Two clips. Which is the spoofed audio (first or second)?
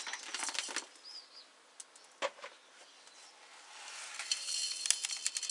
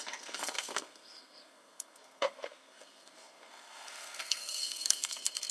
second